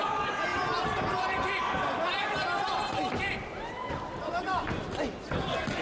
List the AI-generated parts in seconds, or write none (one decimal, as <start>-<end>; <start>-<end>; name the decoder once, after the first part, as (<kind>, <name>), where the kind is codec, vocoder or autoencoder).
none